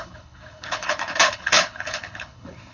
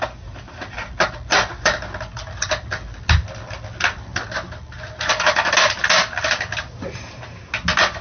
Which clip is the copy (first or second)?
first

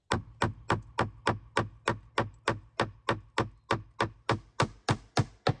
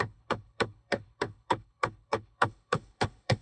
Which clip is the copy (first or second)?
second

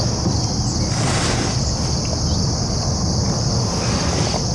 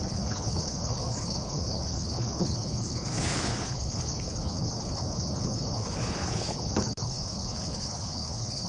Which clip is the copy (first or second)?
second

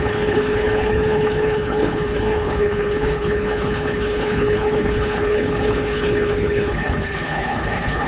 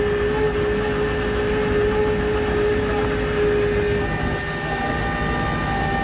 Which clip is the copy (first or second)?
first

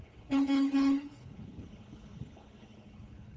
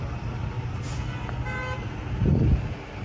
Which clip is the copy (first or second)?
first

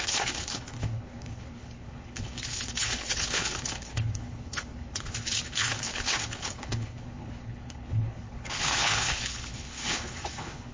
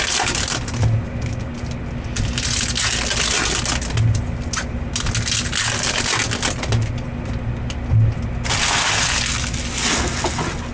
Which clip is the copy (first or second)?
first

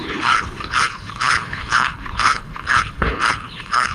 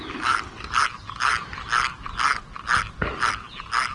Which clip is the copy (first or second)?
first